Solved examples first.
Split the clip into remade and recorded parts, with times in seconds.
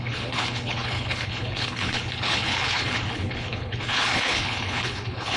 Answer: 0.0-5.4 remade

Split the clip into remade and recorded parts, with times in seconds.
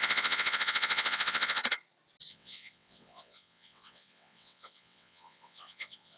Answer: 0.0-1.6 remade; 1.6-2.3 recorded; 2.3-6.2 remade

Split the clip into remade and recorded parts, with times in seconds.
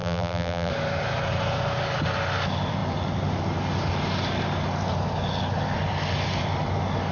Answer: 0.0-0.7 remade; 0.7-7.1 recorded